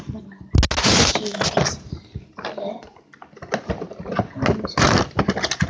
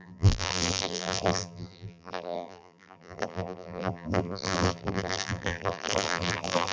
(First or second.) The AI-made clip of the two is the second